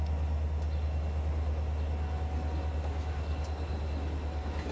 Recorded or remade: recorded